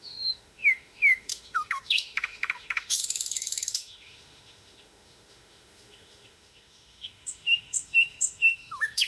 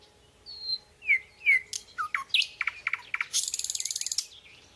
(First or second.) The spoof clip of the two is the first